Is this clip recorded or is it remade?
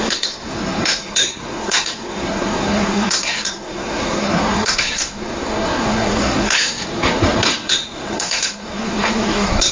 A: remade